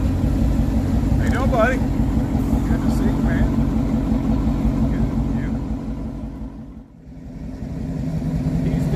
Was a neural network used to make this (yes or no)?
no